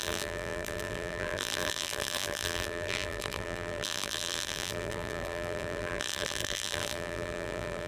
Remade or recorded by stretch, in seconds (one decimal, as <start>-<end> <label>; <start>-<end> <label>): 0.0-7.9 remade